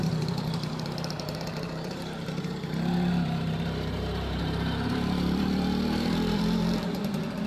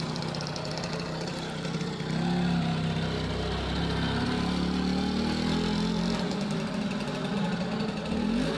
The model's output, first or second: first